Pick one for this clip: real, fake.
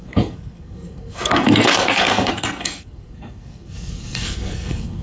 fake